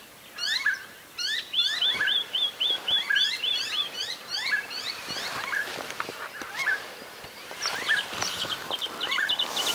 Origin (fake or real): fake